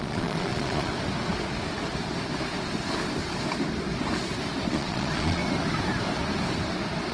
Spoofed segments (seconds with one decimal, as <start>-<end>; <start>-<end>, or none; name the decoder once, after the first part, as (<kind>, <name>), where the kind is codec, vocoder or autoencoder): 0.0-0.9 (vocoder, Vocos); 4.7-5.4